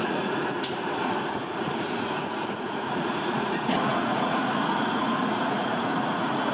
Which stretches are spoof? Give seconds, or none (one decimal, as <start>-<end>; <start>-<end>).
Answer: 0.0-6.5

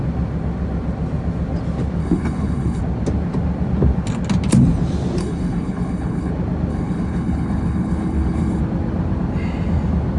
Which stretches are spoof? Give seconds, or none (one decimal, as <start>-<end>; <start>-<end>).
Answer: 2.0-2.8; 5.2-6.3; 6.7-8.6